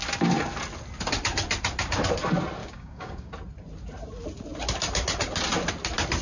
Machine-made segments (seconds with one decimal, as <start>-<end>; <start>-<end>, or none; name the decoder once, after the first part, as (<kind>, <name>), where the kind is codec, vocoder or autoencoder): 2.6-3.3 (codec, DAC)